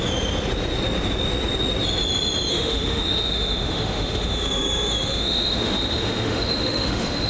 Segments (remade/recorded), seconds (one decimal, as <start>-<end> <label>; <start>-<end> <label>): 0.0-2.5 recorded; 2.5-7.3 remade

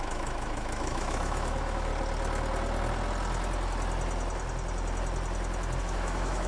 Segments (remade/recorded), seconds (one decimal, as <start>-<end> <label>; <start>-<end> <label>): 0.0-1.9 remade; 1.9-5.8 recorded; 5.8-6.5 remade

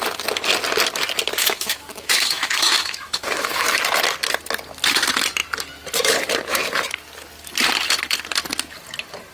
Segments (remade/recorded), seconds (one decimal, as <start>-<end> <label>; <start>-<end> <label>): 0.0-1.4 recorded; 1.4-3.8 remade; 3.8-9.3 recorded